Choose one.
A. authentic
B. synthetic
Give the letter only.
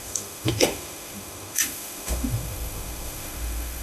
B